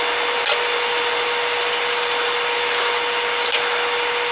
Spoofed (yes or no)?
no